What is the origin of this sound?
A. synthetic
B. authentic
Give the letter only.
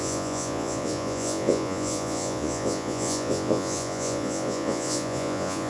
A